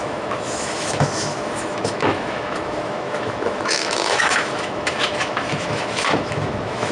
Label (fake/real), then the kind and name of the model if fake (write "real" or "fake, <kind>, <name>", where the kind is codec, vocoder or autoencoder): fake, autoencoder, DAC-VAE